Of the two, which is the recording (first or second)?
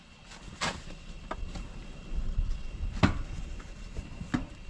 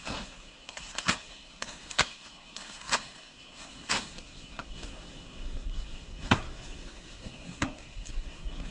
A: first